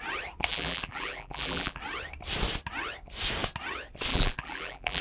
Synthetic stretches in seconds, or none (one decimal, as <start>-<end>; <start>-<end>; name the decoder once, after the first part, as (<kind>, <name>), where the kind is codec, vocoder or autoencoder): 0.5-1.8 (vocoder, BigVGAN v2); 4.1-5.0